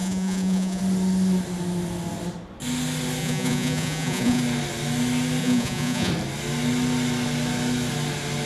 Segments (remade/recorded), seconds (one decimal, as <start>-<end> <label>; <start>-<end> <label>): 0.0-0.8 remade; 0.8-3.2 recorded; 3.2-4.4 remade; 4.4-5.4 recorded; 5.4-6.1 remade; 6.1-8.5 recorded